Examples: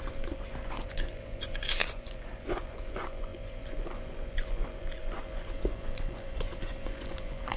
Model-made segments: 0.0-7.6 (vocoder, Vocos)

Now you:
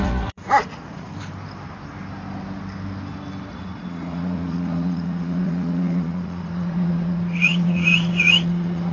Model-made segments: 0.0-1.1 (vocoder, Vocos); 3.5-8.9

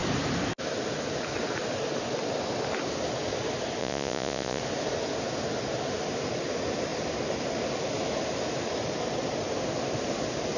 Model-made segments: 3.8-4.6 (vocoder, Vocos)

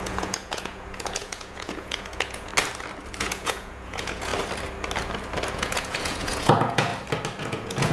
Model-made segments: 0.0-2.5 (vocoder, Vocos); 3.2-4.3; 5.5-6.9; 7.4-7.9